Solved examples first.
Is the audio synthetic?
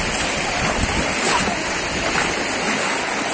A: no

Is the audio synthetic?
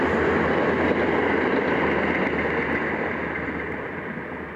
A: no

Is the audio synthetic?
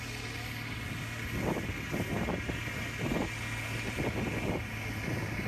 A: no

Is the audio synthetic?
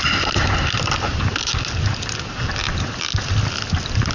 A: no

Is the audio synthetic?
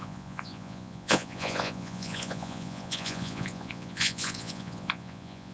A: yes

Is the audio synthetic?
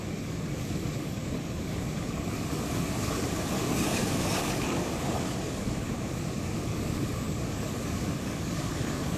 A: yes